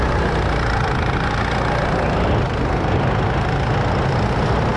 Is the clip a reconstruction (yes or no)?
no